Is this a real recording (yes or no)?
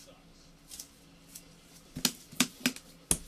yes